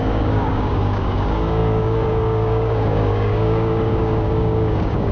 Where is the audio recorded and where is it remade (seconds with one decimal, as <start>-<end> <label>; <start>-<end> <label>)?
0.0-5.1 remade